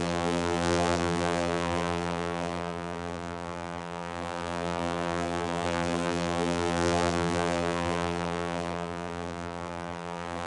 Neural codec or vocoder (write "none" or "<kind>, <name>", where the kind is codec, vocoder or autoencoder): vocoder, BigVGAN v2